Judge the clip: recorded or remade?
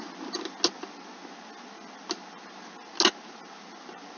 recorded